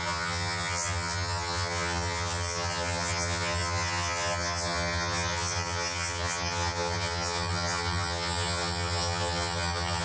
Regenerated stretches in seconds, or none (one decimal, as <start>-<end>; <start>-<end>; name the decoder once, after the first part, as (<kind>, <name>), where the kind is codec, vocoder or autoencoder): 0.0-10.0 (vocoder, HiFi-GAN)